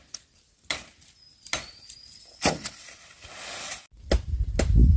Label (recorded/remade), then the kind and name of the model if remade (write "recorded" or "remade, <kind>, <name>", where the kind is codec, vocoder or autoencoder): recorded